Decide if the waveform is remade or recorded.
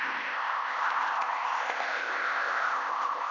remade